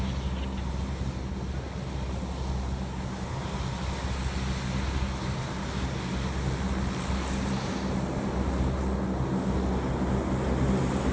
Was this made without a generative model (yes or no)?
yes